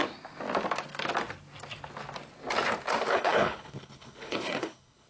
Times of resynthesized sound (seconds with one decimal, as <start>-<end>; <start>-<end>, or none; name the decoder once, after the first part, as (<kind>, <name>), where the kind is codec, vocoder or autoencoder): 3.1-5.1 (codec, HILCodec)